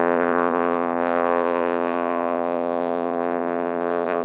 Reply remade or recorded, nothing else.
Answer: remade